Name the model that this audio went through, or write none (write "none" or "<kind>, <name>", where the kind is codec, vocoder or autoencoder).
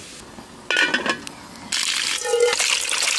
none